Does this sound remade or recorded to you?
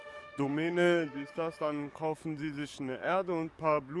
remade